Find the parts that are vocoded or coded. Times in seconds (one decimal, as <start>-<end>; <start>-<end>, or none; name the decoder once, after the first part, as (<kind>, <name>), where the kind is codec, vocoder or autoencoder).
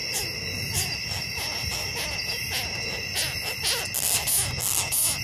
none